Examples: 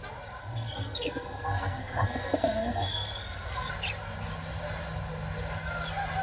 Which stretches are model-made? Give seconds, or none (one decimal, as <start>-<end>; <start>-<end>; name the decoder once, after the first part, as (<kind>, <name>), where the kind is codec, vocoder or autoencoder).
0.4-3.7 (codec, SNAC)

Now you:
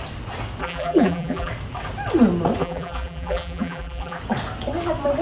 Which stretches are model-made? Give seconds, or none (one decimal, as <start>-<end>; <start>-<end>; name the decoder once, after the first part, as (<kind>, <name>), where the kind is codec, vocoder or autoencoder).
0.6-1.5 (vocoder, BigVGAN v2); 2.6-4.2

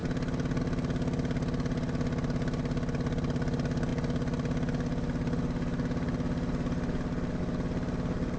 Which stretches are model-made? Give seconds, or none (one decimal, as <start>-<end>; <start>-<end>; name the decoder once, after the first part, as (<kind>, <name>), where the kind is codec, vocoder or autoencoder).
none

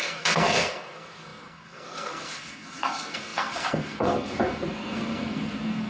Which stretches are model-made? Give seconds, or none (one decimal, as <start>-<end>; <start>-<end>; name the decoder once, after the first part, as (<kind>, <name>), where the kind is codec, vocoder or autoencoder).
0.0-5.9 (codec, SNAC)

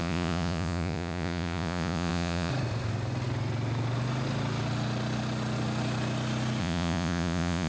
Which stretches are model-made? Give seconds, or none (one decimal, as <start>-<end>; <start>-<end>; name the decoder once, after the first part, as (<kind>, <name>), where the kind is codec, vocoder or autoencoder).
0.0-2.5 (vocoder, Vocos); 6.6-7.7

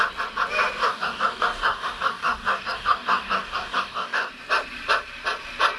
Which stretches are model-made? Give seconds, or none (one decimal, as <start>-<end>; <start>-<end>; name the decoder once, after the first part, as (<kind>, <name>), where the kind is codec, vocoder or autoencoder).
0.8-4.3 (codec, DAC)

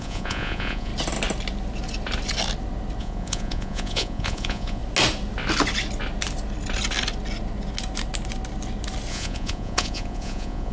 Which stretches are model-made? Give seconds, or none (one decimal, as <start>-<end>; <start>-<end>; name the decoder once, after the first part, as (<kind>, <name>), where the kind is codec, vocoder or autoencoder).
0.0-0.9 (vocoder, Vocos); 3.0-4.8; 9.1-10.7